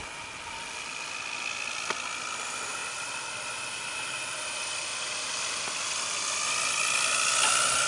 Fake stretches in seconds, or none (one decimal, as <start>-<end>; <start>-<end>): none